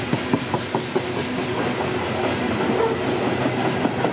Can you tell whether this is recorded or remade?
recorded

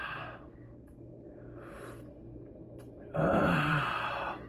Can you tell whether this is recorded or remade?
remade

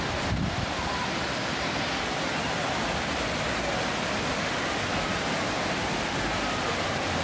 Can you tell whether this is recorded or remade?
recorded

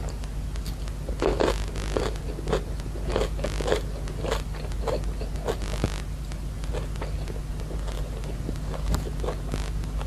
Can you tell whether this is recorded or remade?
recorded